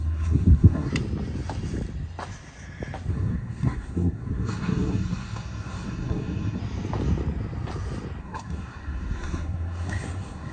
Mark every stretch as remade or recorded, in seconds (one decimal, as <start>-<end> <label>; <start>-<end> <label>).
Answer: 0.0-0.9 remade; 0.9-3.1 recorded; 3.1-6.6 remade; 6.6-8.2 recorded; 8.2-10.5 remade